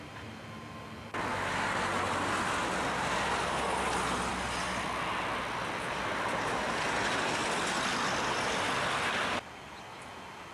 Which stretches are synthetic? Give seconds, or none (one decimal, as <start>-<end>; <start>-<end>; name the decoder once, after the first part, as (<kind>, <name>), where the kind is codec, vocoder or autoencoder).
none

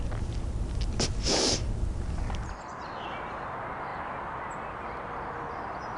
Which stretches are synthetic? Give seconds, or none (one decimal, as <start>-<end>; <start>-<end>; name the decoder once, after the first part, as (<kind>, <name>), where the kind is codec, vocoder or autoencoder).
none